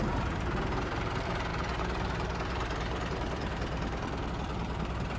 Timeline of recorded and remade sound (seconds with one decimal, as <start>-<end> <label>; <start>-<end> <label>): 0.0-5.2 remade